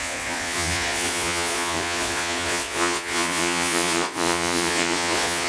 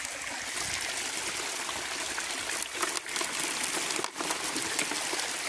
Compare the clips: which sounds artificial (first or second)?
first